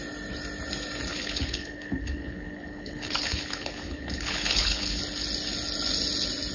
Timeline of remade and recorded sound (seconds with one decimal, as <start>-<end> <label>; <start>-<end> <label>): 0.0-1.1 recorded; 1.1-5.0 remade; 5.0-6.5 recorded